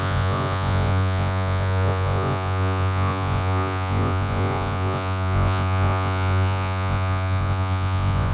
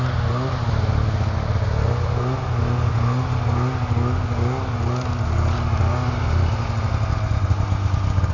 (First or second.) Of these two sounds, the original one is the second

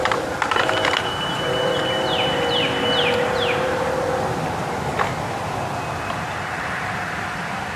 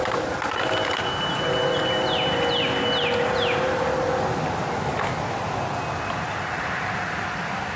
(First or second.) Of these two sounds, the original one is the second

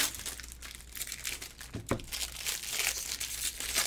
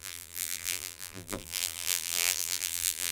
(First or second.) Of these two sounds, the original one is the first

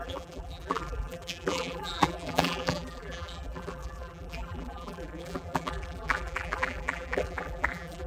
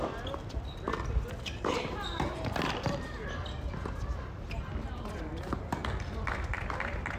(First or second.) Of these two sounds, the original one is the second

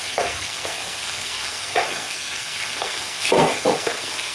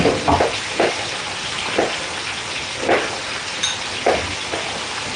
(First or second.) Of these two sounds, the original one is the second